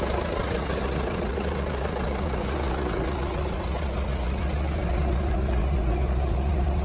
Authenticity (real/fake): fake